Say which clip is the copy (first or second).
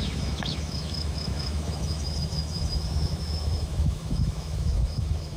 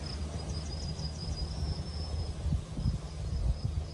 first